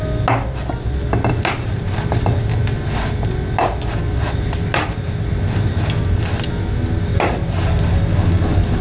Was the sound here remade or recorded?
recorded